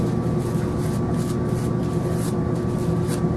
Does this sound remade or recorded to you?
recorded